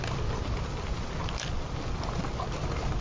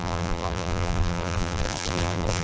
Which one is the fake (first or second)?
second